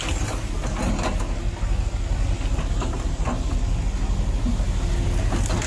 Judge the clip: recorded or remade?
recorded